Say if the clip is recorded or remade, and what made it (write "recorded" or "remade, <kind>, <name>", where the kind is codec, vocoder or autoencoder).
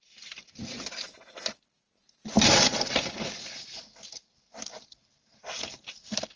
recorded